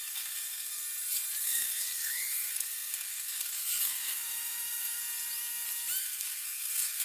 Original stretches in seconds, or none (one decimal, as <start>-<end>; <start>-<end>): 0.8-1.4; 5.0-6.0